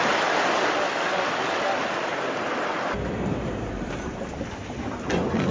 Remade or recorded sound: recorded